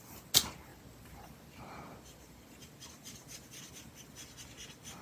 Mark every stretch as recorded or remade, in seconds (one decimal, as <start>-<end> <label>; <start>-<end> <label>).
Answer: 0.0-0.7 recorded; 0.7-3.7 remade; 3.7-5.0 recorded